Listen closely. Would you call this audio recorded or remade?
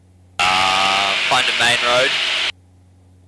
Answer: recorded